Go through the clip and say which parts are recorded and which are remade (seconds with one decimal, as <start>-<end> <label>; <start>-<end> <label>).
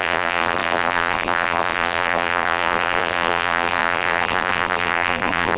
0.0-5.6 remade